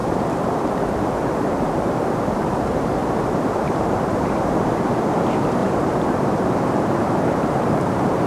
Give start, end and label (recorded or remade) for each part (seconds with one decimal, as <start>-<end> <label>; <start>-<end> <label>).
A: 0.0-5.0 remade; 5.0-5.6 recorded; 5.6-8.3 remade